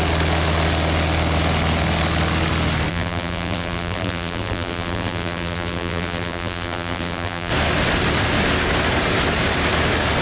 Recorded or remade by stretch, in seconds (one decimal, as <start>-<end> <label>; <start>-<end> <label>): 0.0-2.9 recorded; 2.9-7.5 remade; 7.5-10.2 recorded